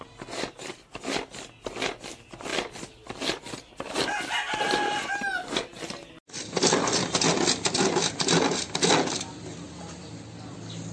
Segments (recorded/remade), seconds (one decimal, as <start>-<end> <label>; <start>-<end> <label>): 0.0-10.9 recorded